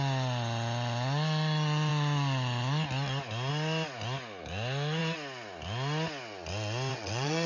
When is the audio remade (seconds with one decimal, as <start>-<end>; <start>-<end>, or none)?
6.9-7.5